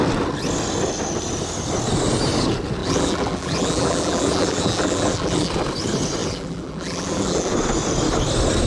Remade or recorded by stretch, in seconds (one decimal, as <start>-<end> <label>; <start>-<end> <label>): 0.0-2.8 recorded; 2.8-5.5 remade; 5.5-6.2 recorded; 6.2-7.5 remade; 7.5-8.7 recorded